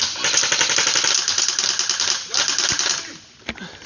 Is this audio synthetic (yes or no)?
no